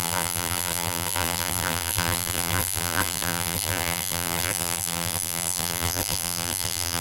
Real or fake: fake